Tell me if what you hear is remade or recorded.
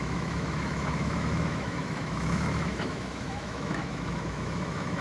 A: remade